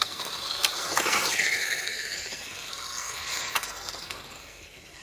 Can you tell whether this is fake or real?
fake